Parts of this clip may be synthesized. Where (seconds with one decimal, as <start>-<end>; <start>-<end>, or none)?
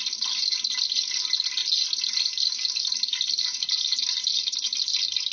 0.5-1.1